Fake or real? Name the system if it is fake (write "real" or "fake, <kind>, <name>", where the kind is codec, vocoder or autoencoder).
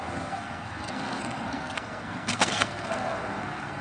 fake, codec, SNAC